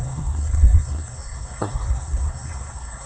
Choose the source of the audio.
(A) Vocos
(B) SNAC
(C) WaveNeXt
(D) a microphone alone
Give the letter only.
B